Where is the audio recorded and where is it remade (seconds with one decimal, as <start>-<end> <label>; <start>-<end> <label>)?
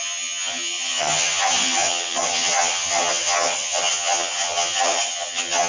0.0-5.7 remade